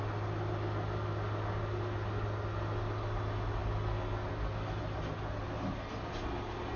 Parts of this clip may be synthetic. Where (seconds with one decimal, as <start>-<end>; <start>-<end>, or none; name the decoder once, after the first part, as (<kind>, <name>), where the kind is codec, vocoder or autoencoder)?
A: none